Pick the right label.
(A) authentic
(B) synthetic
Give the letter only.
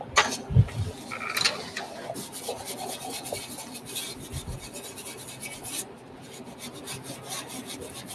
A